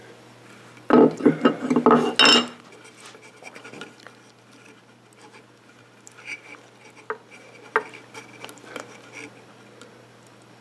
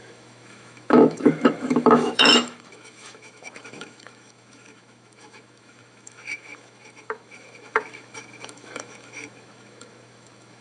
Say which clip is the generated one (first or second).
second